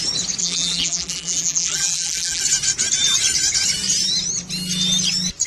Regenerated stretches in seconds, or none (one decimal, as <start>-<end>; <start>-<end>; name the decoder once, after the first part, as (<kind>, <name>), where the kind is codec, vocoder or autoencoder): 0.4-2.4 (vocoder, BigVGAN v2)